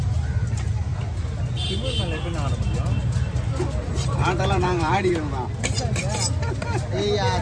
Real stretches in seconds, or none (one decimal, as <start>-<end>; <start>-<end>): 0.0-3.0; 5.1-7.4